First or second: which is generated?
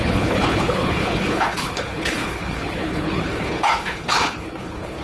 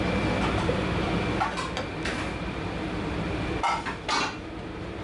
first